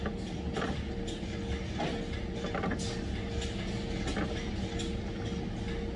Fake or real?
real